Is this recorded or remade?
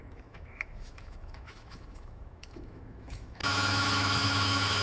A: remade